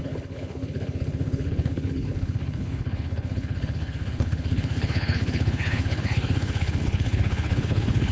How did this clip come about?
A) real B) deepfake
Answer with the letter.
B